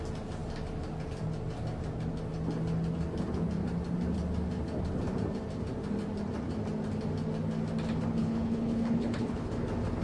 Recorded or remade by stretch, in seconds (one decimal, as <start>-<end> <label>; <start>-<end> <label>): 0.0-8.2 recorded; 8.2-9.5 remade; 9.5-10.0 recorded